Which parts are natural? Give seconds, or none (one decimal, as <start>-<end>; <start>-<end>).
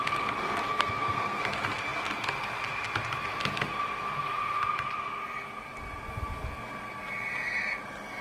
0.0-0.7; 1.4-8.2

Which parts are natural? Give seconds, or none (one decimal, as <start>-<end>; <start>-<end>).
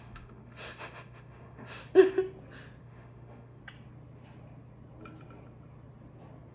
1.8-2.8; 3.6-6.5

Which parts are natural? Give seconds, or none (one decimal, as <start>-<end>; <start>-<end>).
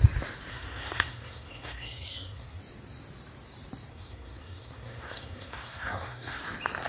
0.0-0.5; 2.6-3.9; 6.4-6.9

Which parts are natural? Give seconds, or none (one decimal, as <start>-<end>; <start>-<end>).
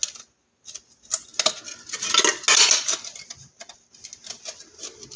0.0-5.2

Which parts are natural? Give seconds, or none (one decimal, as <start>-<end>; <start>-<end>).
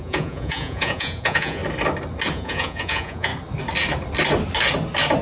1.6-2.3; 3.3-5.2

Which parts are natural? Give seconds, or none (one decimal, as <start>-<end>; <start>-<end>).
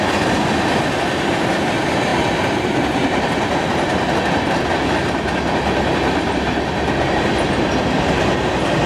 0.0-8.9